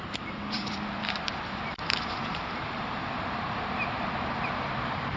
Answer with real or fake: fake